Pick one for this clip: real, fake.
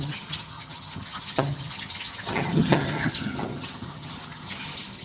fake